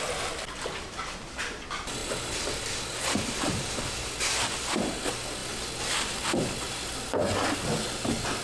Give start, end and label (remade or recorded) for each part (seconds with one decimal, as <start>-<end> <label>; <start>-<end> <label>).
0.0-8.4 recorded